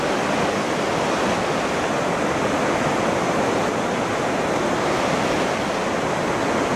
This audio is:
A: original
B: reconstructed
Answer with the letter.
A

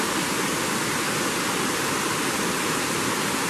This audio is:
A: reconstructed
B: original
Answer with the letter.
B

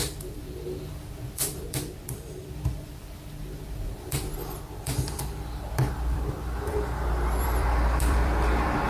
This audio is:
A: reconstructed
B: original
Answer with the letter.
A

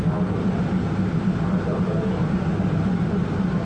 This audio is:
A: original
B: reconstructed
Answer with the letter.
A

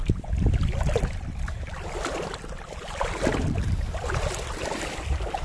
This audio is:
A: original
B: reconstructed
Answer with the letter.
B